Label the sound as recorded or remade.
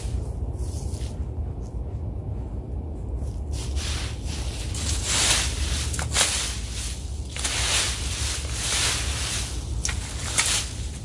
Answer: recorded